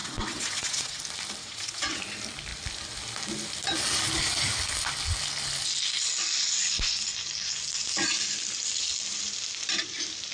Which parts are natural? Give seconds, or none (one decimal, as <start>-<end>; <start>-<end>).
1.0-1.4; 2.0-10.3